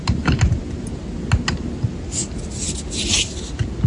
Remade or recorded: recorded